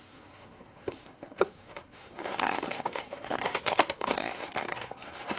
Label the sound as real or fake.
fake